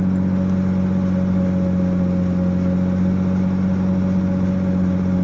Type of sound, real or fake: real